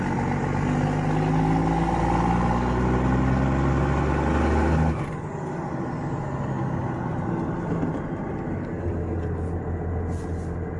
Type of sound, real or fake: real